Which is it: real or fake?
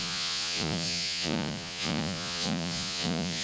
fake